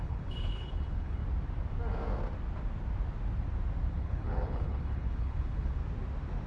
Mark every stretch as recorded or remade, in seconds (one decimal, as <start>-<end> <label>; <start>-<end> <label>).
0.0-1.2 remade; 1.2-3.9 recorded; 3.9-5.8 remade; 5.8-6.5 recorded